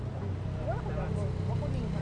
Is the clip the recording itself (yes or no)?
yes